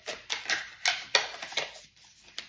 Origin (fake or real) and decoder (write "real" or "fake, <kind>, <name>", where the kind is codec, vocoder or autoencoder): real